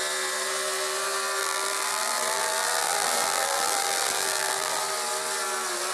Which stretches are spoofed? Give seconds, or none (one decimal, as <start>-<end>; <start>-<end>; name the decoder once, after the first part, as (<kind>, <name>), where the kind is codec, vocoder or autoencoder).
1.4-4.8 (vocoder, BigVGAN v2)